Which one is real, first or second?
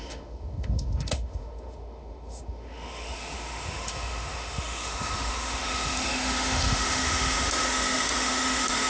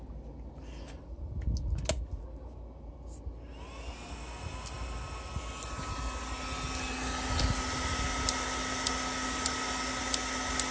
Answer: second